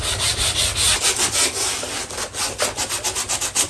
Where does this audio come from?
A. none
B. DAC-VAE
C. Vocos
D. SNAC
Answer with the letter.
A